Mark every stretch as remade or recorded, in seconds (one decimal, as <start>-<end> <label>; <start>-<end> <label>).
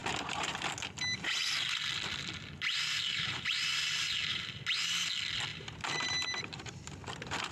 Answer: 0.0-0.5 remade; 0.5-3.1 recorded; 3.1-4.6 remade; 4.6-5.5 recorded; 5.5-6.9 remade; 6.9-7.5 recorded